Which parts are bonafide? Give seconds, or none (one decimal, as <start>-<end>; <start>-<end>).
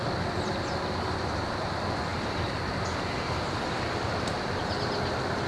0.0-5.5